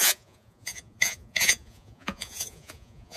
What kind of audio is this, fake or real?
fake